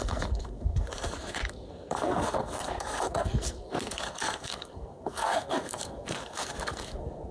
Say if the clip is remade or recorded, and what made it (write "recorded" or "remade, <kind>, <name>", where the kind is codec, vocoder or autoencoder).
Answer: remade, codec, SNAC